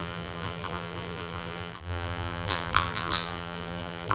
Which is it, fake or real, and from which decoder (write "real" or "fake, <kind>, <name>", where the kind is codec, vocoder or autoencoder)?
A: fake, vocoder, BigVGAN v2